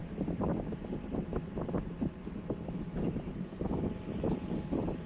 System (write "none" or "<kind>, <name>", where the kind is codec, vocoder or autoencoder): none